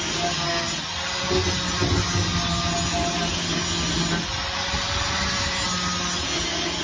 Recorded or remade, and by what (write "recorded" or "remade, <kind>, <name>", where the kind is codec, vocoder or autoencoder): recorded